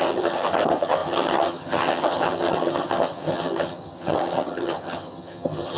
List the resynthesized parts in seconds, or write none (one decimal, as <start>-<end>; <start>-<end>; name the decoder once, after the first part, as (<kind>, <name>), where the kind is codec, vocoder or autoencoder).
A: 0.0-5.8 (vocoder, HiFi-GAN)